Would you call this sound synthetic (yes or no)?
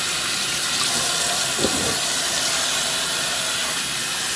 no